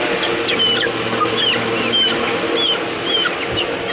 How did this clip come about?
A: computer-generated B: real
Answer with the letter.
B